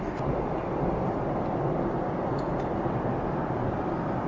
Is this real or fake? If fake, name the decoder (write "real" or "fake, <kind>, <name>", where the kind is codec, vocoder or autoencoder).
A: real